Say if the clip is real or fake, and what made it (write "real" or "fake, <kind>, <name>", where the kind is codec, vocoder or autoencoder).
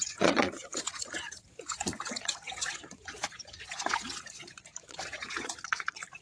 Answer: fake, vocoder, Vocos